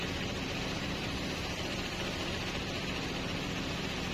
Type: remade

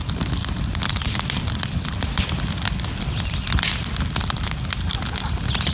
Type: recorded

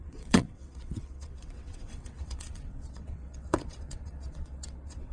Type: remade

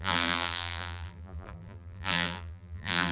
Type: remade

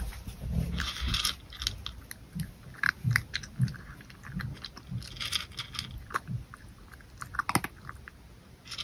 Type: recorded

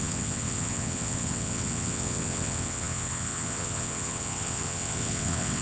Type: remade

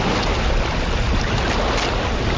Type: recorded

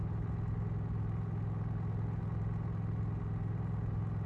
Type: recorded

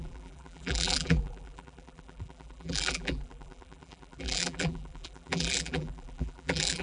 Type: remade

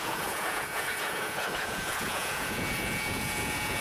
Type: remade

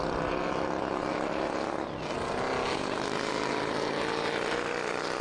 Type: recorded